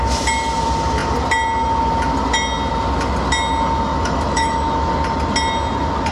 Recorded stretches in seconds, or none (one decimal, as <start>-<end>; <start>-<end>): 0.0-3.9; 4.9-6.1